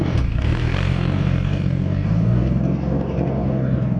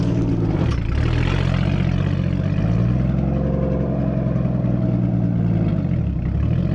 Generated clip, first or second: first